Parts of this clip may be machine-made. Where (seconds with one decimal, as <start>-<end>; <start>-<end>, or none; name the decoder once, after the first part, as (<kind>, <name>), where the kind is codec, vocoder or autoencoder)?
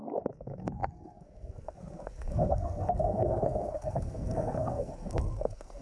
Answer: 0.0-5.8 (codec, SNAC)